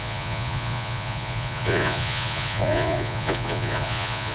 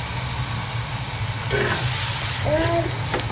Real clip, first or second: second